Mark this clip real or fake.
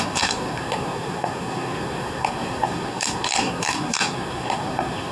fake